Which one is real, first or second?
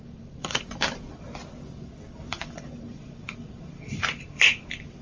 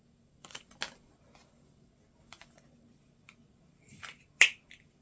second